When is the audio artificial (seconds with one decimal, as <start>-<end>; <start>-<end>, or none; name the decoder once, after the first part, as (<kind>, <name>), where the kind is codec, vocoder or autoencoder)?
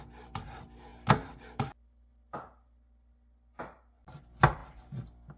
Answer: none